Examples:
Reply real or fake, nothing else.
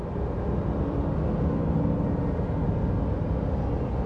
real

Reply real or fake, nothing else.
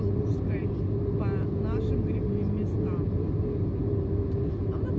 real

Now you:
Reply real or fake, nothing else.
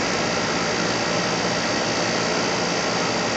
real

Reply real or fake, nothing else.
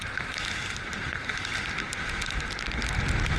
real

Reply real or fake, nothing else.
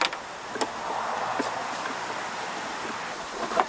real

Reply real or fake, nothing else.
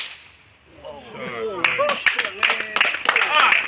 real